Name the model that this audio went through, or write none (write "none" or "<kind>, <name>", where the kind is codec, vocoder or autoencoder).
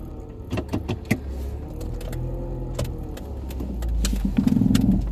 none